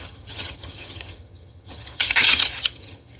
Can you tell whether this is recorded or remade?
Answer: remade